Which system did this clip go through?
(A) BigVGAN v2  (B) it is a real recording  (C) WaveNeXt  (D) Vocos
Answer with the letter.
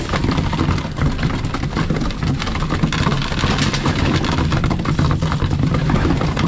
B